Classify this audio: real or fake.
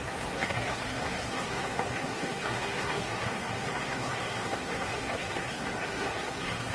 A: fake